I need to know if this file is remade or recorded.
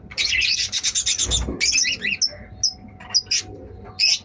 recorded